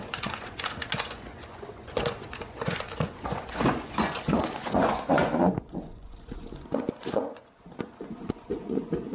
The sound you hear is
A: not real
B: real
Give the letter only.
A